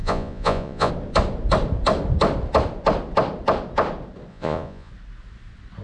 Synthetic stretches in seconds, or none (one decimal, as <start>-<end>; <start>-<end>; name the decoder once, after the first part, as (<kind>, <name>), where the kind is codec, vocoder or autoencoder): 0.0-0.9 (vocoder, Vocos); 4.3-4.9